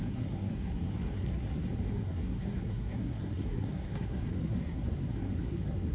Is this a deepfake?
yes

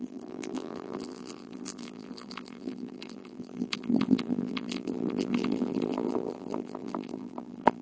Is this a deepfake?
yes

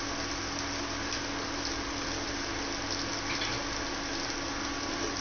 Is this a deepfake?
no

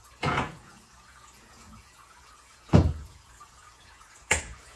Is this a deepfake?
yes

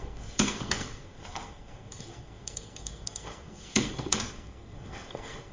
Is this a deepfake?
yes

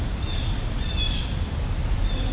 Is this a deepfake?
yes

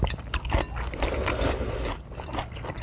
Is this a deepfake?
no